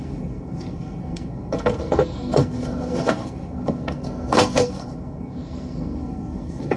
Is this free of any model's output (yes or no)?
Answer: no